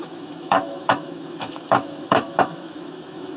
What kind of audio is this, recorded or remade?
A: remade